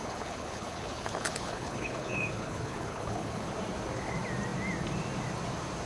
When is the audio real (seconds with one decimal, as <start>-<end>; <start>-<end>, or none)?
3.5-5.9